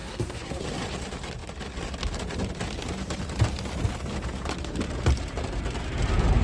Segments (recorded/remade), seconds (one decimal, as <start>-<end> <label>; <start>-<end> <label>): 0.0-0.6 remade; 0.6-6.4 recorded